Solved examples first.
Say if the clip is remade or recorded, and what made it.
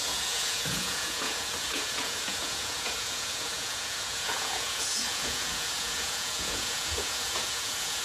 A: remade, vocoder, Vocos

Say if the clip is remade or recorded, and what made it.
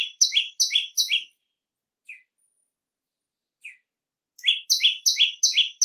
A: recorded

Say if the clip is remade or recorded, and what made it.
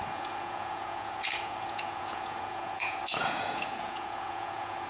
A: remade, vocoder, Vocos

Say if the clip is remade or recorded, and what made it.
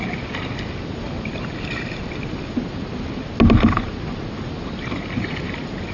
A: recorded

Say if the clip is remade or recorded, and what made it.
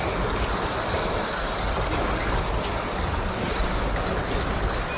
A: recorded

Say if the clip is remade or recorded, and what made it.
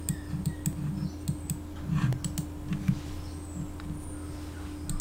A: recorded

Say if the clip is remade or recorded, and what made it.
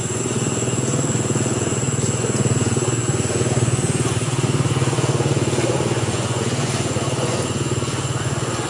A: remade, vocoder, Vocos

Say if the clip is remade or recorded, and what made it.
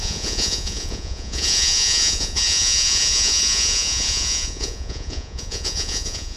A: remade, vocoder, Vocos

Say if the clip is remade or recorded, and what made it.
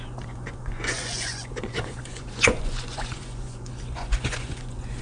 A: remade, vocoder, Vocos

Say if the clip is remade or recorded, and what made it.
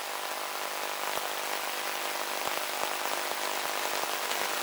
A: recorded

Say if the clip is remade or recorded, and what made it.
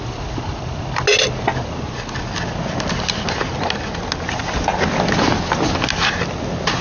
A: recorded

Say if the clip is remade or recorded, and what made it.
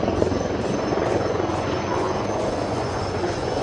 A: remade, vocoder, Vocos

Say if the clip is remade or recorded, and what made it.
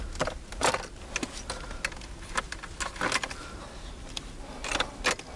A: recorded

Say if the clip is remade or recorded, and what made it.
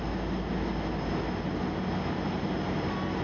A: recorded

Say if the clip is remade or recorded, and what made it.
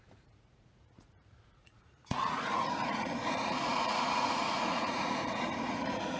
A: remade, vocoder, Vocos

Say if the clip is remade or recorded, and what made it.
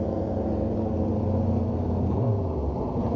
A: recorded